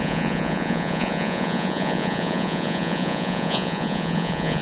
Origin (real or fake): fake